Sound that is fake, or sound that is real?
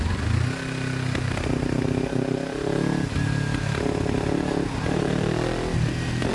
real